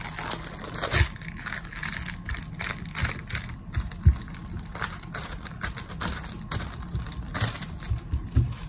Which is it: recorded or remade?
recorded